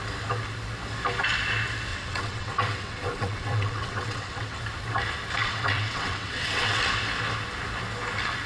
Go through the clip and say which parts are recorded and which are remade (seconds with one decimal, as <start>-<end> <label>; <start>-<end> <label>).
0.0-1.9 recorded; 1.9-4.6 remade; 4.6-5.4 recorded; 5.4-6.8 remade; 6.8-8.5 recorded